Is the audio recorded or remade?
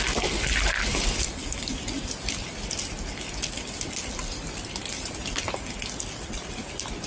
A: recorded